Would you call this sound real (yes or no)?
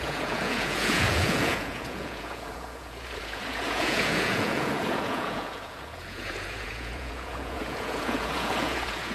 no